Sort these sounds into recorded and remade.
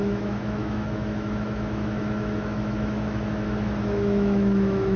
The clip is remade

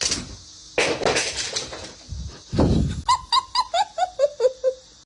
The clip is recorded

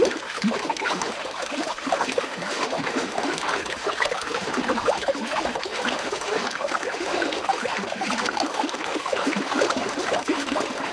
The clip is remade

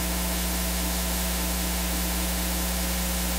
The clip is remade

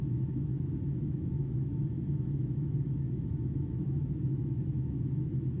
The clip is remade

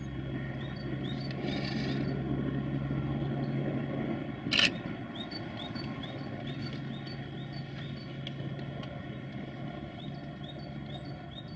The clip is recorded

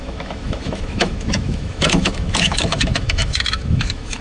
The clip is remade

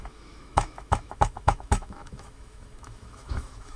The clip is remade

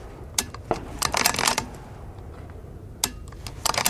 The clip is recorded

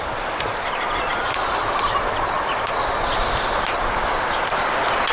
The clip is recorded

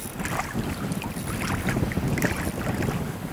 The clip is recorded